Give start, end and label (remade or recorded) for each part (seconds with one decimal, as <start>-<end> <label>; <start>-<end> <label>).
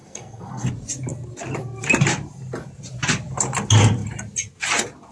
0.0-0.7 remade; 0.7-5.1 recorded